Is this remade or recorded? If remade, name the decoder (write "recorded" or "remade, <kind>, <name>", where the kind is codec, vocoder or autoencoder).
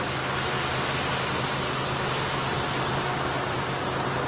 recorded